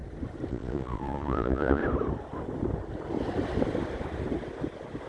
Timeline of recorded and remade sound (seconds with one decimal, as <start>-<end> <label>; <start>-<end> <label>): 0.0-0.5 recorded; 0.5-1.8 remade; 1.8-5.1 recorded